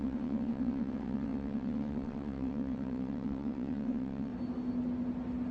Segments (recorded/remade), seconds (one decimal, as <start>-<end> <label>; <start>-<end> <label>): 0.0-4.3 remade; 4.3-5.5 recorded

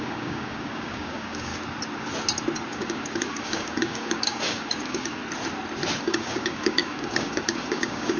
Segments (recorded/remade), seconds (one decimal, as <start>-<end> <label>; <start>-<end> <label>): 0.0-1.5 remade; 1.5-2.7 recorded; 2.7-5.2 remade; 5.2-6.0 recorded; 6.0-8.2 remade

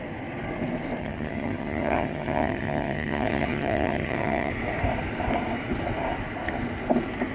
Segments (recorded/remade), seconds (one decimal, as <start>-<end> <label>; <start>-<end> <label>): 0.0-1.0 recorded; 1.0-4.5 remade; 4.5-7.3 recorded

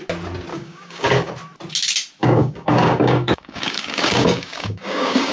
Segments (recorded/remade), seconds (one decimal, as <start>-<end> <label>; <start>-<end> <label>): 0.0-0.5 recorded; 0.5-1.3 remade; 1.3-2.2 recorded; 2.2-5.3 remade

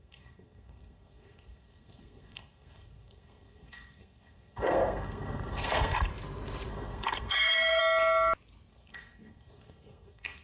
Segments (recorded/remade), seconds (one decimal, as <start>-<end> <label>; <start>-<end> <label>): 0.0-6.1 remade; 6.1-6.7 recorded; 6.7-7.8 remade; 7.8-8.7 recorded; 8.7-10.4 remade

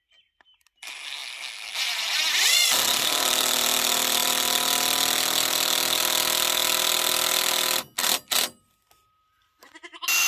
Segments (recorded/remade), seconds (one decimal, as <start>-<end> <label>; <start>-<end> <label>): 0.0-10.3 recorded

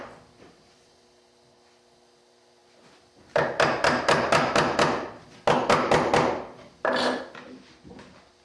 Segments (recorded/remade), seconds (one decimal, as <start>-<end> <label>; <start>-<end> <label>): 0.0-8.4 recorded